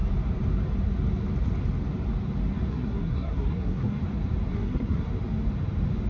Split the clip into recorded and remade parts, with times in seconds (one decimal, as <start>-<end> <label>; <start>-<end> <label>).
0.0-2.7 recorded; 2.7-4.0 remade; 4.0-4.5 recorded; 4.5-5.1 remade; 5.1-6.1 recorded